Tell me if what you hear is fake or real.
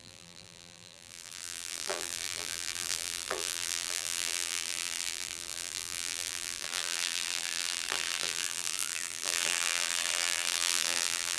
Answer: fake